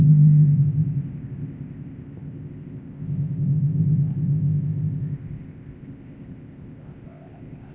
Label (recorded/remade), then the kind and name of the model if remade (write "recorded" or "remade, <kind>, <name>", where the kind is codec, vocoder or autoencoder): remade, codec, ZipCodec